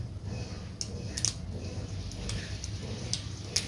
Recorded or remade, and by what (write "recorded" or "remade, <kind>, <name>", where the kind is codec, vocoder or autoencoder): recorded